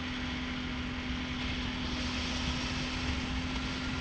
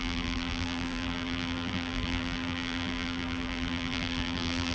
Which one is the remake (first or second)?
second